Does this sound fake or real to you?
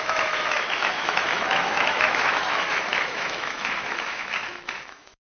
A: fake